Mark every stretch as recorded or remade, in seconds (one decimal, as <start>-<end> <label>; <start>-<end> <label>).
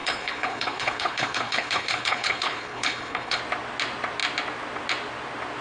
0.0-3.4 remade; 3.4-5.6 recorded